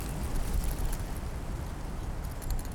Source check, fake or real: real